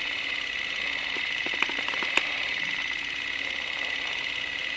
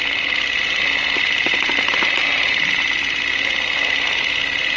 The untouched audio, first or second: second